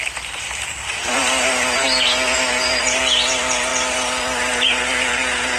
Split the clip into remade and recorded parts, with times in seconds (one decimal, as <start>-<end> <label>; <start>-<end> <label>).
0.0-5.6 recorded

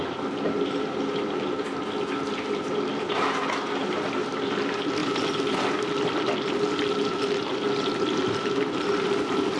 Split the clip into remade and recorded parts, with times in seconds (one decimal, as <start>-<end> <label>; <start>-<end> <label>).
0.0-9.6 recorded

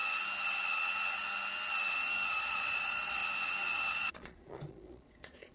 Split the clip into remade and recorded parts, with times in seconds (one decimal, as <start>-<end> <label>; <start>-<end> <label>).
0.0-2.5 recorded; 2.5-3.2 remade; 3.2-3.9 recorded; 3.9-5.5 remade

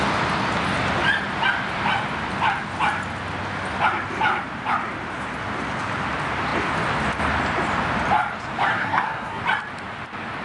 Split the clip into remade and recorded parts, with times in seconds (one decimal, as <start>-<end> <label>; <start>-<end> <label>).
0.0-8.7 recorded; 8.7-9.4 remade; 9.4-10.4 recorded

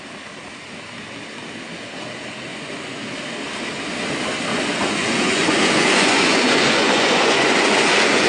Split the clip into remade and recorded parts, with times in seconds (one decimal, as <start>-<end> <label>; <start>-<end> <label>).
0.0-2.5 recorded; 2.5-3.0 remade; 3.0-4.5 recorded; 4.5-8.3 remade

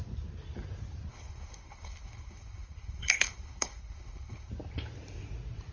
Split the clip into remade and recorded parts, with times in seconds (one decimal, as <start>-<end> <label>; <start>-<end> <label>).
0.0-1.1 recorded; 1.1-4.5 remade; 4.5-5.7 recorded

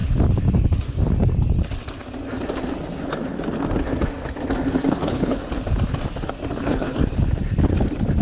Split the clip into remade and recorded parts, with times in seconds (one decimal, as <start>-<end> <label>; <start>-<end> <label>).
0.0-4.9 recorded; 4.9-5.4 remade; 5.4-6.6 recorded; 6.6-7.0 remade; 7.0-8.2 recorded